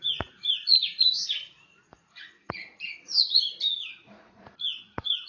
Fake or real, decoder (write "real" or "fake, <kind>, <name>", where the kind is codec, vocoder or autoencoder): fake, vocoder, Vocos